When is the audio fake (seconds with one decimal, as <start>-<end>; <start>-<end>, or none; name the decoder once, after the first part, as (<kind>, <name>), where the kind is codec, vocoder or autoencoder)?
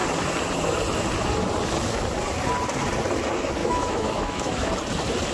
3.6-4.7 (autoencoder, DAC-VAE)